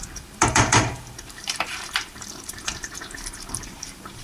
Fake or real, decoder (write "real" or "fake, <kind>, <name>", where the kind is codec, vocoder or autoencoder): fake, vocoder, BigVGAN v2